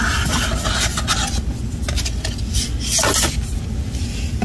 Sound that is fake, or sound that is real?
real